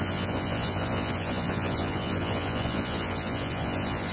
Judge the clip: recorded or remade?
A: remade